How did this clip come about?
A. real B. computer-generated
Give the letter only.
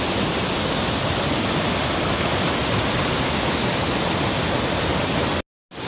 A